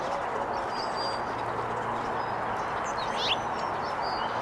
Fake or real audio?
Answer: real